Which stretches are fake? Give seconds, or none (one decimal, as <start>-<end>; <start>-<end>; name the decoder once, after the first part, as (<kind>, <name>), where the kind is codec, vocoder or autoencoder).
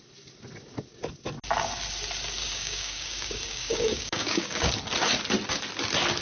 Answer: 2.4-4.7 (codec, DAC)